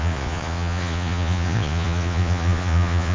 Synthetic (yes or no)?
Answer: yes